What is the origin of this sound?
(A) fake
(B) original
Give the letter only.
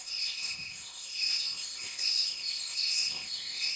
A